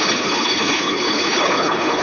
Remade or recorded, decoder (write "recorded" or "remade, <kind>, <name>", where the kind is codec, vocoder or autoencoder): remade, codec, HILCodec